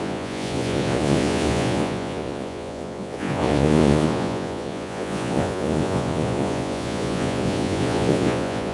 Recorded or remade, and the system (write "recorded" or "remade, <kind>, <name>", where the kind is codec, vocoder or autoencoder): remade, vocoder, Vocos